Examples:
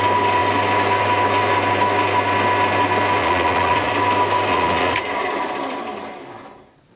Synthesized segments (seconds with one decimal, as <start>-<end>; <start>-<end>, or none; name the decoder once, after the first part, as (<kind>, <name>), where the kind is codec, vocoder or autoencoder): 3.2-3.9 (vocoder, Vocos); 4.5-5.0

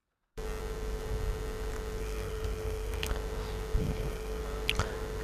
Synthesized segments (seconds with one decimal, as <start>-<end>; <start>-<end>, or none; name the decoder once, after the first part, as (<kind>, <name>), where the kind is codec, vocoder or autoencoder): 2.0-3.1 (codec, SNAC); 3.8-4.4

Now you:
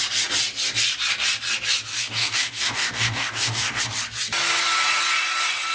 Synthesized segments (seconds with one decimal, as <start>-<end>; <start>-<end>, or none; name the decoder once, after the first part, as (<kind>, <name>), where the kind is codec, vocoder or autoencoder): 1.9-3.8 (codec, DAC)

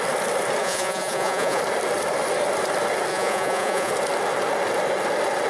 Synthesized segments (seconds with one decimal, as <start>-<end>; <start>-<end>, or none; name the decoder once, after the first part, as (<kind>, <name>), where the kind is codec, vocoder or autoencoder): 0.6-1.6 (vocoder, Vocos); 3.1-3.9

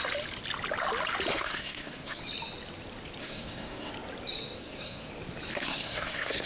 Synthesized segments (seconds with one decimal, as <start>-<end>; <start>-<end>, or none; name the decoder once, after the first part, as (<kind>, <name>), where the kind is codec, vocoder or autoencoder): 1.3-2.2 (codec, SNAC); 3.2-3.9; 4.6-5.1; 5.5-6.5